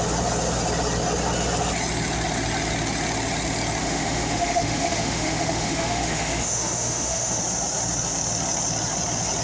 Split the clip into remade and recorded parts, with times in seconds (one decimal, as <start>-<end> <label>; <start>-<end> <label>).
0.0-3.8 recorded; 3.8-7.4 remade; 7.4-9.4 recorded